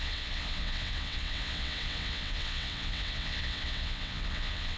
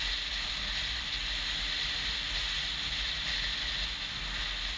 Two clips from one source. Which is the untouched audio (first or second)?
second